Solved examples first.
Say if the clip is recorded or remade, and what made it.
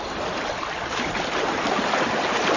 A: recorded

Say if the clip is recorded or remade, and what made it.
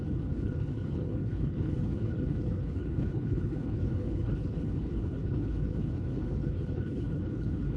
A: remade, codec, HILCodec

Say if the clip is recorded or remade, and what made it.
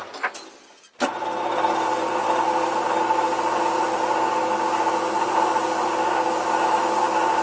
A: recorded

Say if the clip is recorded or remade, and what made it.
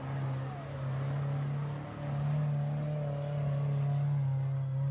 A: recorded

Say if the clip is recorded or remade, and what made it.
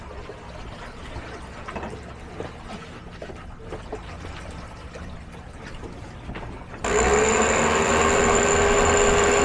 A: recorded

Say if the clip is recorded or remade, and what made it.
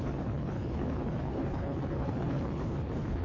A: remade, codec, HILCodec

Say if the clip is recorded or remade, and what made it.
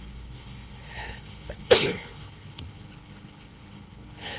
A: remade, codec, HILCodec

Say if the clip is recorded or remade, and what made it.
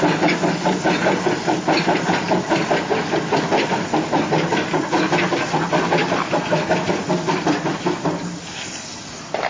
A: recorded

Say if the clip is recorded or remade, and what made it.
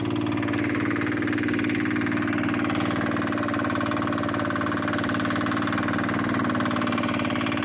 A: recorded